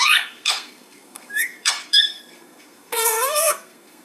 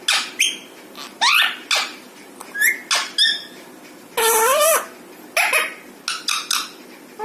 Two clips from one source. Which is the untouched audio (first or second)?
second